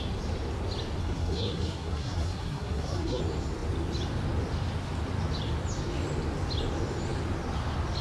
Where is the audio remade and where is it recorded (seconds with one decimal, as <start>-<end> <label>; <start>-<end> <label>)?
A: 0.0-1.0 recorded; 1.0-3.2 remade; 3.2-8.0 recorded